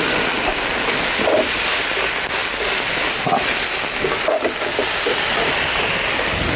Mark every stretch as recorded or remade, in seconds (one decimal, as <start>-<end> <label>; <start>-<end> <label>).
0.0-6.6 recorded